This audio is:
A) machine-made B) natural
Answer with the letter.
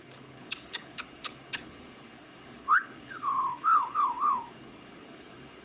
A